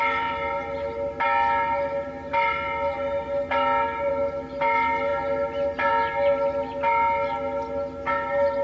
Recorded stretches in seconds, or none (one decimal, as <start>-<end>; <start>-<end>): 0.0-8.6